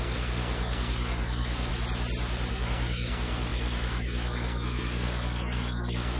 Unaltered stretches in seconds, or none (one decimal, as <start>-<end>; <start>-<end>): 1.7-2.5